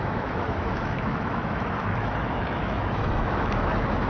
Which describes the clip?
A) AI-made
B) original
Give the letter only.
A